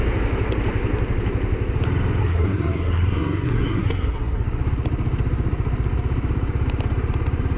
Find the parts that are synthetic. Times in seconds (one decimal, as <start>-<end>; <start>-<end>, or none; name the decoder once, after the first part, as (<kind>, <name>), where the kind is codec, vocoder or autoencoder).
2.2-4.4 (codec, SNAC)